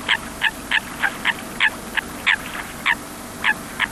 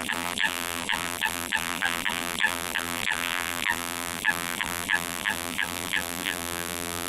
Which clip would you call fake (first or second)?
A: second